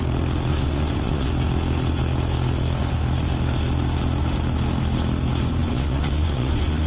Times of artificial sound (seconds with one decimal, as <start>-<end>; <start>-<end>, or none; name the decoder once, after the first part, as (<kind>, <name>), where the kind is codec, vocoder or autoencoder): 0.5-1.3 (vocoder, Vocos); 5.6-6.9